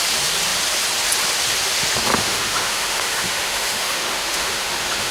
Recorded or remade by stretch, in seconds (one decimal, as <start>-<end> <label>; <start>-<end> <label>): 0.0-2.1 recorded; 2.1-5.1 remade